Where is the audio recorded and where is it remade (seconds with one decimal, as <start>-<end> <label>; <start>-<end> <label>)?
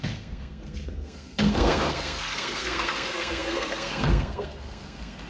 0.0-5.3 remade